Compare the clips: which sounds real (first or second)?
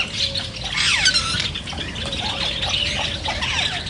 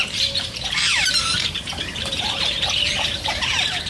first